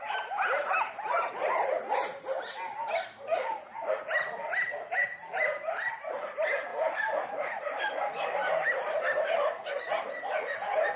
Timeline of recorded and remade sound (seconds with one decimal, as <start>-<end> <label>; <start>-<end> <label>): 0.0-11.0 recorded

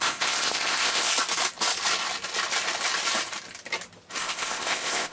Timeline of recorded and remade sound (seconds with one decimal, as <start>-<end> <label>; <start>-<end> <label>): 0.0-1.1 remade; 1.1-4.2 recorded; 4.2-5.1 remade

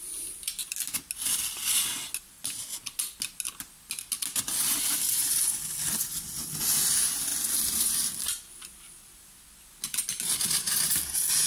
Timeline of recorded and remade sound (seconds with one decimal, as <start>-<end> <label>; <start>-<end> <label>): 0.0-7.3 recorded; 7.3-8.5 remade; 8.5-11.5 recorded

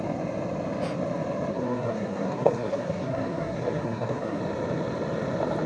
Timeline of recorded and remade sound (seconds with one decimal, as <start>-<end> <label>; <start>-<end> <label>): 0.0-1.5 recorded; 1.5-4.4 remade; 4.4-5.7 recorded

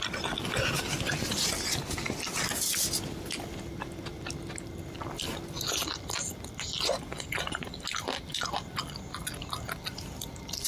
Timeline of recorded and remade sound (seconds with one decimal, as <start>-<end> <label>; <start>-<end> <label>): 0.0-10.7 recorded

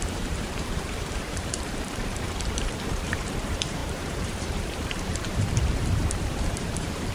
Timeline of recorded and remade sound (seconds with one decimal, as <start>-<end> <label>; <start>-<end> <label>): 0.0-7.1 remade

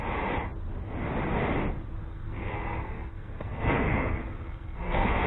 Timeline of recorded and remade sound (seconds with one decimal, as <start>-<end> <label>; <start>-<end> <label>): 0.0-2.1 recorded; 2.1-5.3 remade

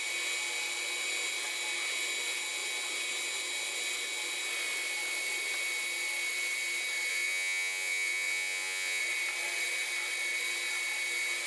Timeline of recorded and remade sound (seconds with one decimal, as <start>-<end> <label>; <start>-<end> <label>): 0.0-7.1 recorded; 7.1-9.0 remade; 9.0-11.5 recorded